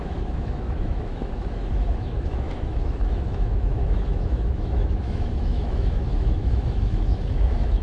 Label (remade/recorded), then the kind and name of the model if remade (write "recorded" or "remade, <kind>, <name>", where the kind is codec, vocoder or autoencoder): remade, autoencoder, DAC-VAE